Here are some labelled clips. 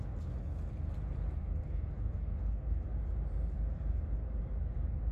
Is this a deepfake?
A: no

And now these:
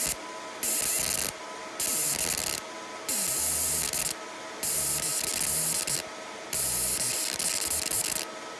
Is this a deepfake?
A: no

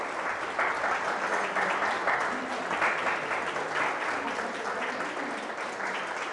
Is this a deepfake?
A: no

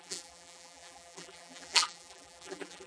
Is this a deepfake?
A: yes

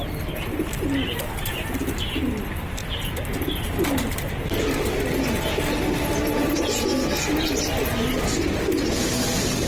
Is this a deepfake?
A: no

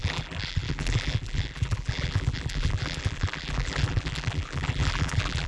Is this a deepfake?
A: yes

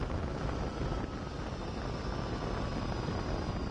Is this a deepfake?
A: no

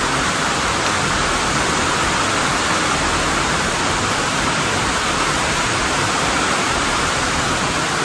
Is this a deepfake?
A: no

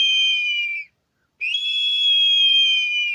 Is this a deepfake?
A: yes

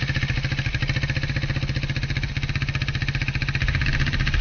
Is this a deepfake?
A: no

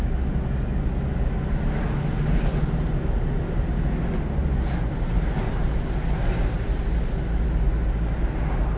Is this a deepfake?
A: no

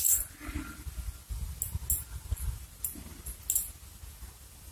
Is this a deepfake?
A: no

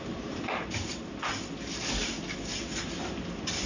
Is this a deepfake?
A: yes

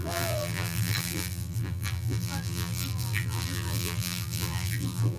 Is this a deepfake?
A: yes